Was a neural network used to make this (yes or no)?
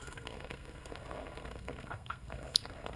yes